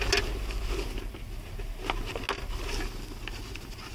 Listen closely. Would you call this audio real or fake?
real